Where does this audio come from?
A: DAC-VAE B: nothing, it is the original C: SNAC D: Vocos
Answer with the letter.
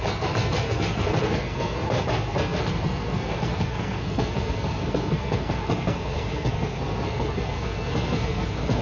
C